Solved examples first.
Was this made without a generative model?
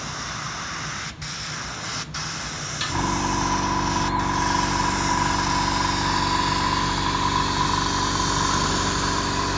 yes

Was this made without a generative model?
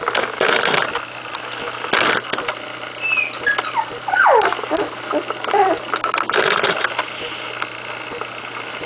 yes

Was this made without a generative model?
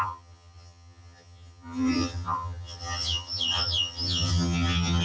no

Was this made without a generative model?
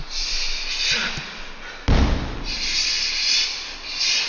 yes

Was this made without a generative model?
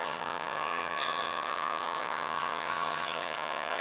no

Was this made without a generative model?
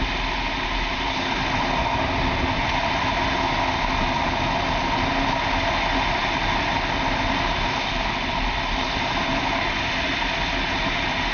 yes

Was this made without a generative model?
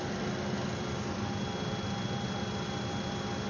yes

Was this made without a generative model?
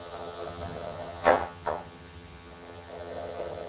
no